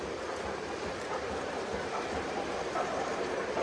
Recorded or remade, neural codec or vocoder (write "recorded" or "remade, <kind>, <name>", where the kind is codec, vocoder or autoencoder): remade, vocoder, BigVGAN v2